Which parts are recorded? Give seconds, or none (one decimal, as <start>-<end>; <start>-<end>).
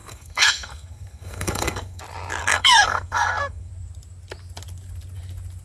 2.0-2.4; 3.7-5.6